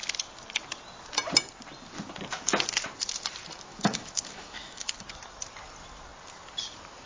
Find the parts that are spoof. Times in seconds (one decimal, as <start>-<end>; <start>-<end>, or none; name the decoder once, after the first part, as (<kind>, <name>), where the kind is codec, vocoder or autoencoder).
3.7-4.9 (autoencoder, DAC-VAE)